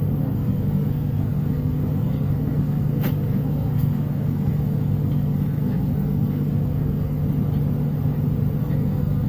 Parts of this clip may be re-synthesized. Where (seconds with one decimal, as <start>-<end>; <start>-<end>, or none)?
0.0-7.2; 8.6-9.3